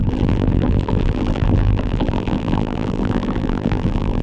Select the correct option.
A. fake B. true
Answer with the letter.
A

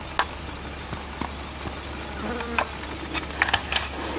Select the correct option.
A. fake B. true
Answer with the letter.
B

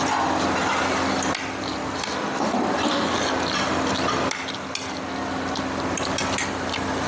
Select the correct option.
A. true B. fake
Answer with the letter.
A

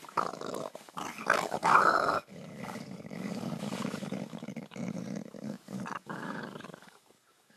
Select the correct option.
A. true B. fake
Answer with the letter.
B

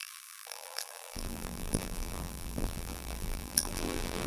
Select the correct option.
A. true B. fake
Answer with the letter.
B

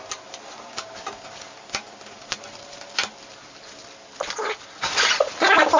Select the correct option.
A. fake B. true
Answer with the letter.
B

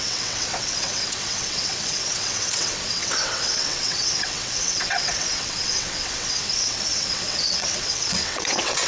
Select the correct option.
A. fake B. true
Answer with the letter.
A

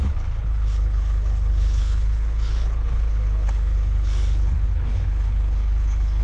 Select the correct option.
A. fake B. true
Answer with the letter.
A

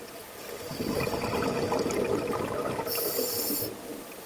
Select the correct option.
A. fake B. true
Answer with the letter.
B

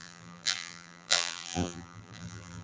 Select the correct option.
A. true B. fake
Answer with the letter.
B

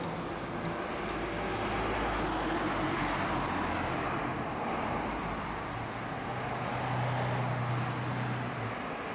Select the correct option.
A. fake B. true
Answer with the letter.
B